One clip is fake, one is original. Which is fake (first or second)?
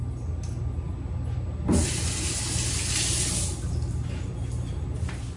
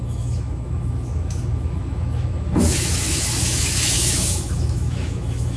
second